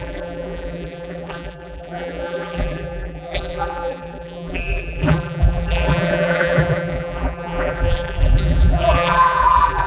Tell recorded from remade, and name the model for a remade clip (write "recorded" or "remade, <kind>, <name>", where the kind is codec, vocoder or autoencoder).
remade, vocoder, BigVGAN v2